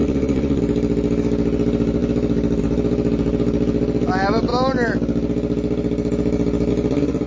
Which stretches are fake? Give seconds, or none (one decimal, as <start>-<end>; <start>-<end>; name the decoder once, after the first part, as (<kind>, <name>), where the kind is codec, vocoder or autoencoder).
0.0-0.6 (vocoder, Vocos)